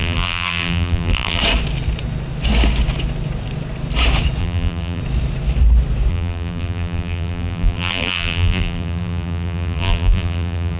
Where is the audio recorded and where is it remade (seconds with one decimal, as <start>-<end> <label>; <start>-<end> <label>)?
0.0-1.4 remade; 1.4-4.4 recorded; 4.4-5.0 remade; 5.0-6.1 recorded; 6.1-10.8 remade